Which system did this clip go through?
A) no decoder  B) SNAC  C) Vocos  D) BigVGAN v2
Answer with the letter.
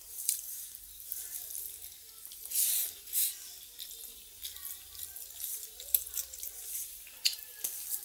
D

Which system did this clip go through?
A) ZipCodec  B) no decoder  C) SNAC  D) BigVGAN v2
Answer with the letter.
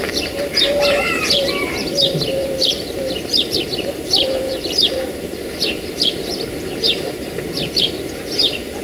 D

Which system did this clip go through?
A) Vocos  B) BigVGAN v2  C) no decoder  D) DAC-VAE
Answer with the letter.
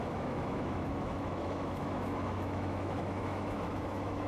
D